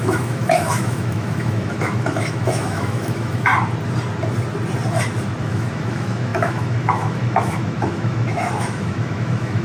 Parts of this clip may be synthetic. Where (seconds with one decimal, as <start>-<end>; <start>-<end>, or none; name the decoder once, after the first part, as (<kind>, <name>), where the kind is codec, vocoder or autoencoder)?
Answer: 0.0-3.5 (autoencoder, DAC-VAE); 5.4-9.6